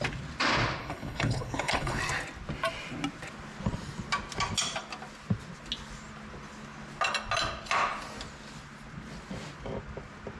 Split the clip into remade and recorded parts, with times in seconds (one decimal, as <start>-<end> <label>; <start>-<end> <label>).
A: 0.0-0.8 recorded; 0.8-2.0 remade; 2.0-10.4 recorded